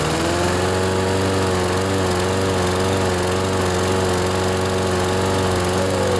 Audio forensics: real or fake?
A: real